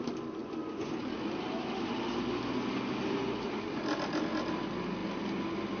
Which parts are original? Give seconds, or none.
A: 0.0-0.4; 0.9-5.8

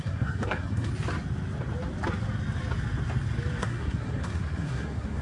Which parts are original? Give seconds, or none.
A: 0.9-3.6

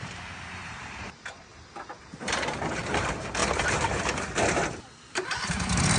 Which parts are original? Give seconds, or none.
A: 1.5-2.2; 3.4-5.1